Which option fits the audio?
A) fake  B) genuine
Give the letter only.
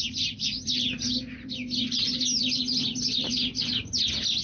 B